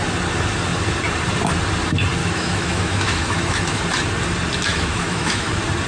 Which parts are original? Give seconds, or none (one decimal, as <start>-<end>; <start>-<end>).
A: 0.0-2.2; 3.8-4.7; 5.5-5.9